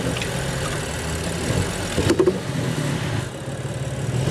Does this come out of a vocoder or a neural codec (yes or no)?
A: no